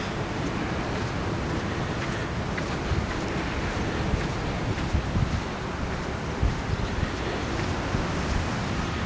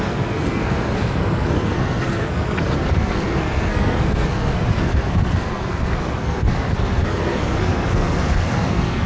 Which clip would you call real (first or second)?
first